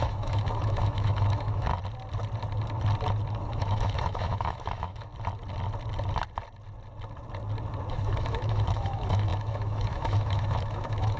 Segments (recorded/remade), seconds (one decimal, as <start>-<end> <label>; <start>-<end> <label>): 0.0-1.7 remade; 1.7-3.4 recorded; 3.4-5.1 remade; 5.1-7.9 recorded; 7.9-11.2 remade